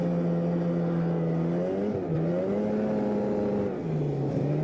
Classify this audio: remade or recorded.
recorded